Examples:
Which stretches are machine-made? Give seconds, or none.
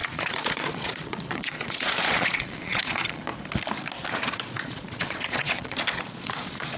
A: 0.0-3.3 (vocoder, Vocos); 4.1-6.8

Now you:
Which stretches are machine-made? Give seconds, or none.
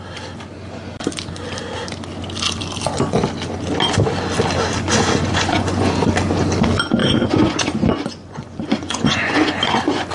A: 5.2-5.9 (vocoder, Vocos); 7.0-10.1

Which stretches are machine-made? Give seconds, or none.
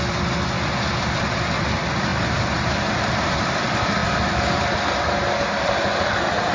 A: none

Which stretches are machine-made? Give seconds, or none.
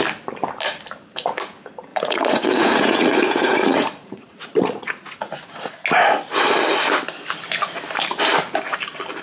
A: 1.9-5.3 (vocoder, Vocos)